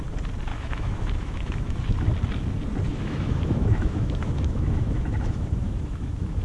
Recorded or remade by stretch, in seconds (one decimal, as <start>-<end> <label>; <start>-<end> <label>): 0.0-0.5 recorded; 0.5-1.8 remade; 1.8-2.9 recorded; 2.9-6.4 remade